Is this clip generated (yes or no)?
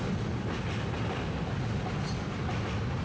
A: no